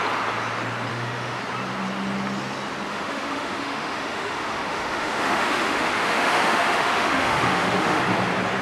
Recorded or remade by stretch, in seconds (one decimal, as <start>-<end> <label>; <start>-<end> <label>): 0.0-0.9 recorded; 0.9-1.4 remade; 1.4-2.9 recorded; 2.9-8.0 remade; 8.0-8.6 recorded